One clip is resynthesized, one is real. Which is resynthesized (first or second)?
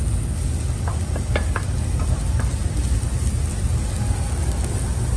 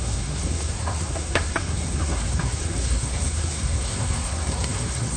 second